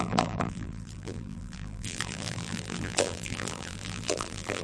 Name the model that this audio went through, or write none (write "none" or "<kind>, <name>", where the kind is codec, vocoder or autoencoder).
vocoder, BigVGAN v2